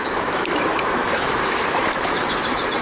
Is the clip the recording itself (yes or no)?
no